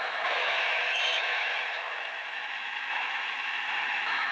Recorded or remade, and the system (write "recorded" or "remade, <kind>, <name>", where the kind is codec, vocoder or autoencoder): remade, autoencoder, DAC-VAE